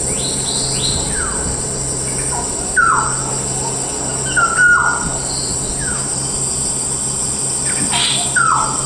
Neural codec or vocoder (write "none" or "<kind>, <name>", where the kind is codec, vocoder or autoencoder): none